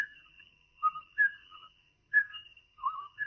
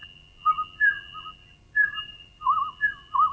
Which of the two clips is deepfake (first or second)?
first